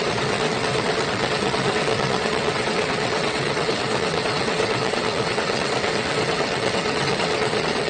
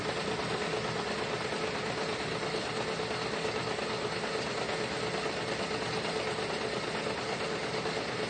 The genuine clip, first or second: second